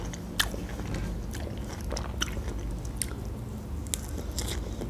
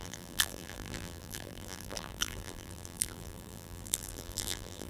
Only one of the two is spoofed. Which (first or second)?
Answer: second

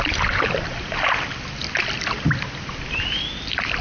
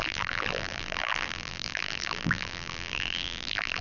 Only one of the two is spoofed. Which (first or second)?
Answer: second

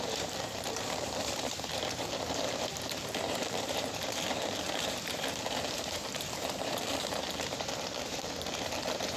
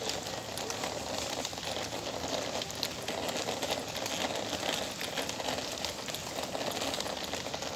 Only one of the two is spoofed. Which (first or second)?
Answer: first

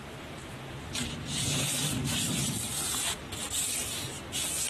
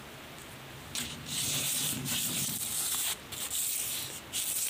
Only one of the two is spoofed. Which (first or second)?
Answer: first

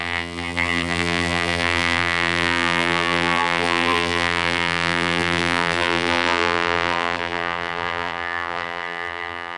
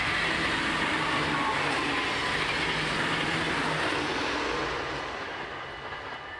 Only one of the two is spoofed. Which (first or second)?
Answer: first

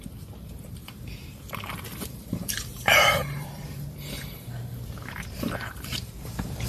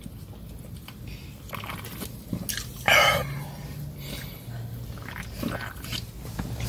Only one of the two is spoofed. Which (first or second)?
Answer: first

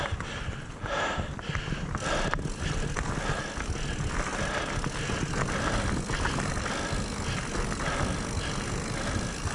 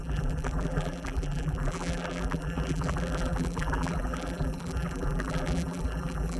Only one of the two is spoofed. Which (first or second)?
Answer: second